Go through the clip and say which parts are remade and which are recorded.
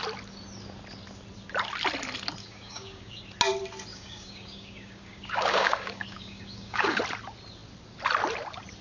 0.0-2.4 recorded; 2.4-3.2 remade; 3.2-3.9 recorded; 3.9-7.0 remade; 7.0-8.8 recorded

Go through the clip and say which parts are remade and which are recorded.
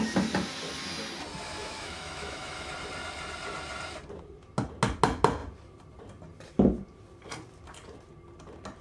0.0-1.6 recorded; 1.6-2.7 remade; 2.7-8.8 recorded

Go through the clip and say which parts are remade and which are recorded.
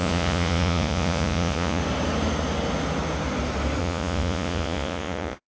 0.0-1.8 remade; 1.8-3.8 recorded; 3.8-5.5 remade